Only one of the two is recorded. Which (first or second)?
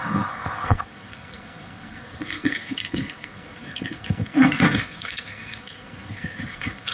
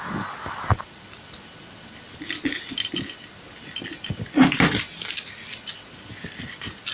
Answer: second